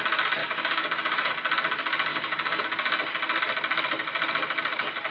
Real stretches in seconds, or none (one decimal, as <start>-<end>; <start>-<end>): 0.0-0.4; 1.3-2.1; 2.6-5.1